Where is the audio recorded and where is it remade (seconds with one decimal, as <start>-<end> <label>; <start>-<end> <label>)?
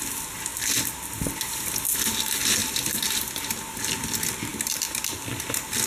0.0-2.6 recorded; 2.6-3.5 remade; 3.5-4.5 recorded; 4.5-5.3 remade; 5.3-5.9 recorded